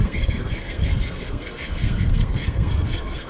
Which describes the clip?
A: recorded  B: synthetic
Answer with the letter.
B